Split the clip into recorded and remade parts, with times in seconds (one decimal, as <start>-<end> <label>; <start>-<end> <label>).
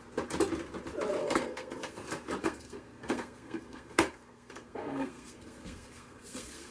0.0-1.2 recorded; 1.2-2.0 remade; 2.0-2.4 recorded; 2.4-6.7 remade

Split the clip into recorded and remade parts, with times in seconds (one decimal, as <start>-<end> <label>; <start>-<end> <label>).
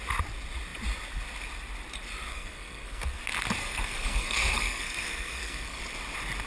0.0-2.3 recorded; 2.3-3.2 remade; 3.2-3.6 recorded; 3.6-5.8 remade; 5.8-6.5 recorded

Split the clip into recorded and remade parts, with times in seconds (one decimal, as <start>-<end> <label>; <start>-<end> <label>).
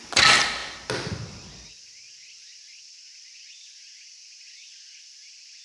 0.0-5.6 recorded